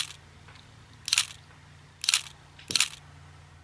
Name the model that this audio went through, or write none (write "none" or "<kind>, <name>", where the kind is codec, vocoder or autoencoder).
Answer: none